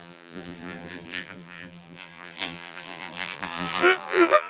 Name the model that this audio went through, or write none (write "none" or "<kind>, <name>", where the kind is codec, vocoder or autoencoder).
vocoder, BigVGAN v2